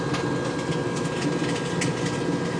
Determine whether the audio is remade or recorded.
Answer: recorded